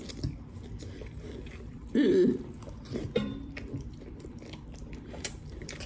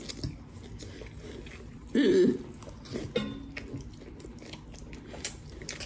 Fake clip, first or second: first